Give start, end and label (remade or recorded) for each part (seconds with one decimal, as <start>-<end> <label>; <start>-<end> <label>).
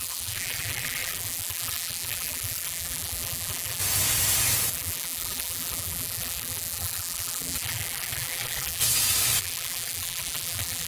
0.0-3.8 remade; 3.8-4.7 recorded; 4.7-8.8 remade; 8.8-9.4 recorded; 9.4-10.9 remade